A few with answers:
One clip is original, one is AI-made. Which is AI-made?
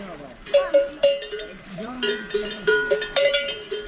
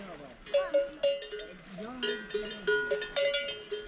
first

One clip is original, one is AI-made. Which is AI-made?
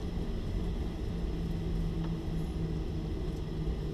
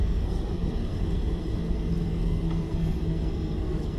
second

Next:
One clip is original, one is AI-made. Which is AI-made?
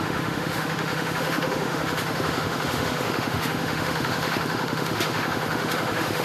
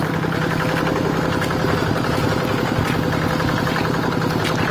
first